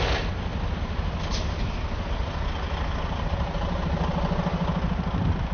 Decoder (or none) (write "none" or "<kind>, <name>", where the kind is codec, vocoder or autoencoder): none